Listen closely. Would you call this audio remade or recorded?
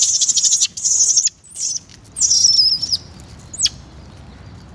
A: recorded